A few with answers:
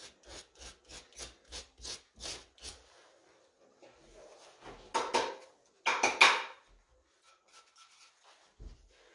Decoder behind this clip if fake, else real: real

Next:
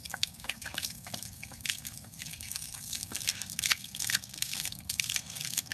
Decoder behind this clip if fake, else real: fake, codec, SNAC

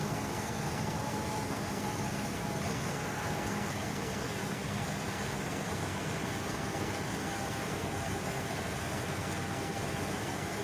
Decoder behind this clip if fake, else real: fake, codec, SNAC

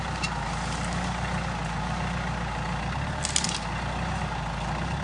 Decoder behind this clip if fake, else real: real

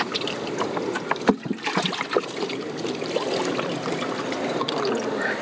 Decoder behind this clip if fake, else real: real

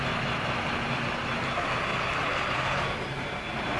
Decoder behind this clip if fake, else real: real